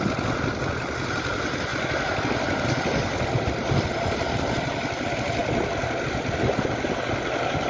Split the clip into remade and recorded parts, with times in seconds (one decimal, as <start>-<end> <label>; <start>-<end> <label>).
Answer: 0.0-7.7 recorded